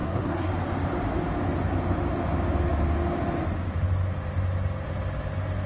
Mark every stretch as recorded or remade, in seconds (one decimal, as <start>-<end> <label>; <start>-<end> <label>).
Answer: 0.0-0.5 remade; 0.5-5.7 recorded